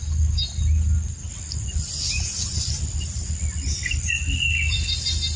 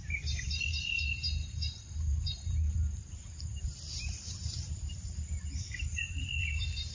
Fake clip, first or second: second